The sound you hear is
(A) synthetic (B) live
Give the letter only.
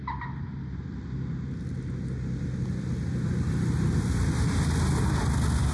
B